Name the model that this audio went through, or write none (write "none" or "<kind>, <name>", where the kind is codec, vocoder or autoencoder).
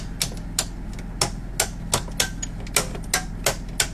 none